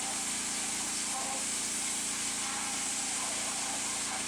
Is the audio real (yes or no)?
yes